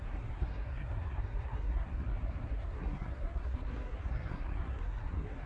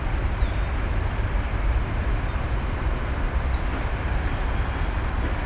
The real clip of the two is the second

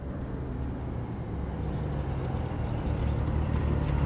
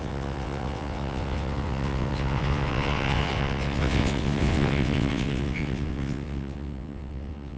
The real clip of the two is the first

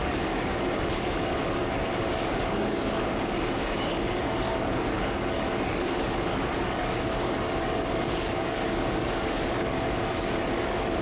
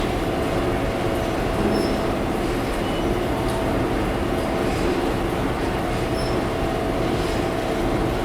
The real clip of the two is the second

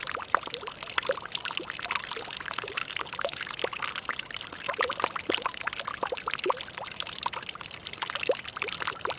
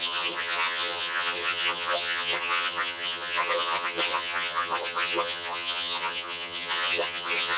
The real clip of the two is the first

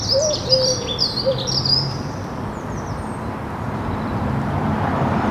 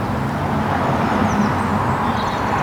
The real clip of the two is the second